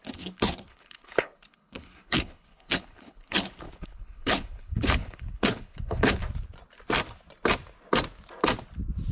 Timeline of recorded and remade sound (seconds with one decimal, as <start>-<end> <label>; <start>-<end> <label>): 0.0-6.2 remade; 6.2-9.1 recorded